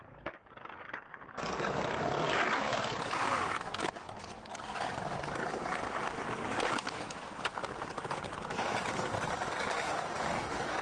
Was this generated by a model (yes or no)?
yes